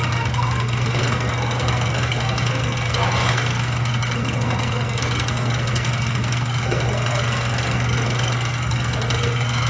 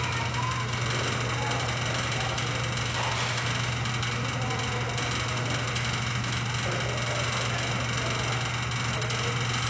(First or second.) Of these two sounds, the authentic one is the second